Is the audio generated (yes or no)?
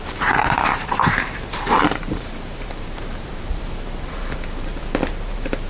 yes